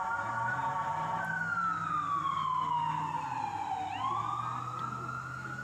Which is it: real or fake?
real